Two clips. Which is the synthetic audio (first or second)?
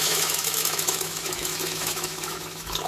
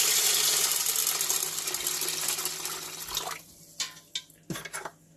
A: first